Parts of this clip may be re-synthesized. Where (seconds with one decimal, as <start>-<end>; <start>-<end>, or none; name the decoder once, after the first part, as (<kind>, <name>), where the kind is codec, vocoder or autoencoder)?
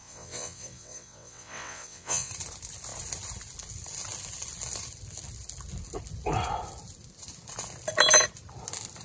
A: 0.0-2.3 (vocoder, WaveNeXt)